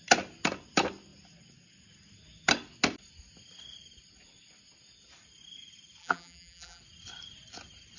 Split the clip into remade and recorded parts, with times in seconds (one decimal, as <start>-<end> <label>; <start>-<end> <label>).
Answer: 0.0-6.0 recorded; 6.0-6.8 remade; 6.8-8.0 recorded